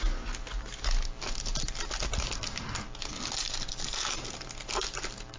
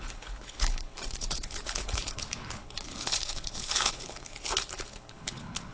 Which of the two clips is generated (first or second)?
second